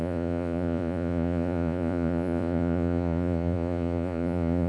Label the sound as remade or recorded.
remade